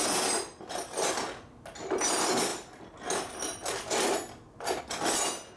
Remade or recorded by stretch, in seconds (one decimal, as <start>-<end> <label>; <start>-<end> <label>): 0.0-5.6 recorded